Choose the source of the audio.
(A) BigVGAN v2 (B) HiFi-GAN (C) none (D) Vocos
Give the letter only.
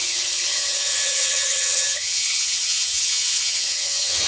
B